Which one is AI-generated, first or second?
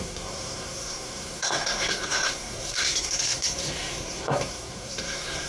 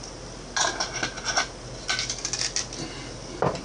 first